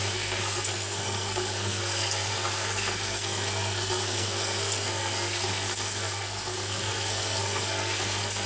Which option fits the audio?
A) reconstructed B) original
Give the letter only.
A